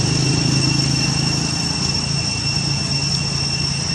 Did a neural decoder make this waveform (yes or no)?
no